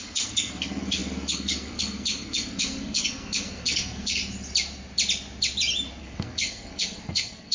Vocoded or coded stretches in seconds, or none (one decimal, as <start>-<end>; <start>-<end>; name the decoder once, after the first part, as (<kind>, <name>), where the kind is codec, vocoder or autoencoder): 0.0-4.2 (codec, SNAC); 6.0-7.5